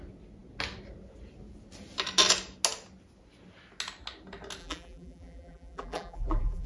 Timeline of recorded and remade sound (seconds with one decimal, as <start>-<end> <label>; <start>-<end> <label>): 0.0-4.6 recorded; 4.6-6.7 remade